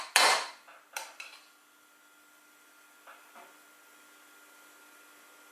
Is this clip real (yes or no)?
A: yes